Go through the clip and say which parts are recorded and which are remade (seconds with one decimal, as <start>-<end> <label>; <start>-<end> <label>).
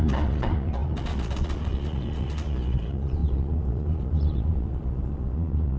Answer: 0.0-5.8 remade